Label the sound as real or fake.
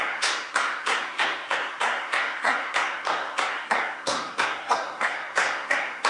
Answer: fake